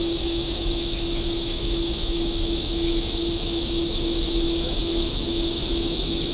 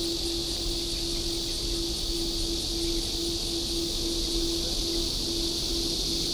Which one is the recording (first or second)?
second